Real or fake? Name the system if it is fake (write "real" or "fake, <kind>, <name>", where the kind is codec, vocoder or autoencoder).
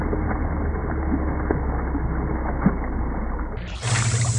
real